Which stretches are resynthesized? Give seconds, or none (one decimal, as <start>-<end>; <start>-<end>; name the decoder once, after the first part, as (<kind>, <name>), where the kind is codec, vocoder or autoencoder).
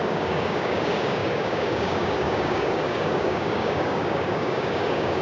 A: 0.0-5.2 (codec, DAC)